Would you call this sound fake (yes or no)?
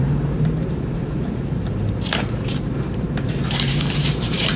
yes